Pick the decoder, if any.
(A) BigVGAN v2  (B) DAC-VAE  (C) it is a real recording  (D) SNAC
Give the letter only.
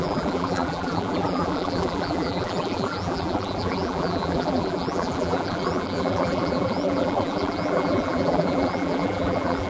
A